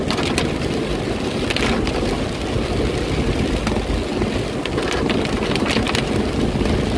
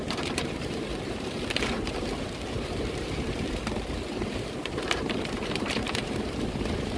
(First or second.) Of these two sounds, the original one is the first